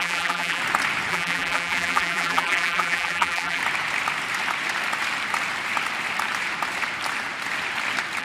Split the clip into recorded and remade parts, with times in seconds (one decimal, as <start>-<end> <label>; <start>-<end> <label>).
0.0-0.6 remade; 0.6-1.1 recorded; 1.1-3.6 remade; 3.6-8.2 recorded